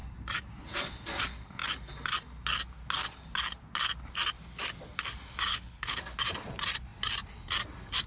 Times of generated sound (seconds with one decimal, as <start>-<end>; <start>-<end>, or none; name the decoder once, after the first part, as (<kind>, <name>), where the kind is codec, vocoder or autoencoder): 5.5-6.0 (codec, HILCodec)

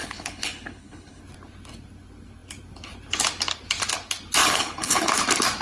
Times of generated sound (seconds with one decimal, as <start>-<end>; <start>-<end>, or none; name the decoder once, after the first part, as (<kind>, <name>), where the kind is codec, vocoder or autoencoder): 0.0-1.2 (codec, HILCodec); 4.4-5.1

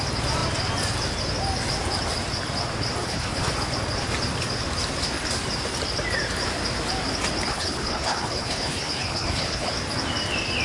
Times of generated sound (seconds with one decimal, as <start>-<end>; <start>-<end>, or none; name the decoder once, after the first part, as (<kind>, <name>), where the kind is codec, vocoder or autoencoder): 3.0-3.5 (codec, HILCodec); 7.5-9.7

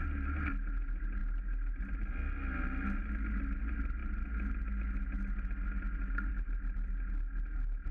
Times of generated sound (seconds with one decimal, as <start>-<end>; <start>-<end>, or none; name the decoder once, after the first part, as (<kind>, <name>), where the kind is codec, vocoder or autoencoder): none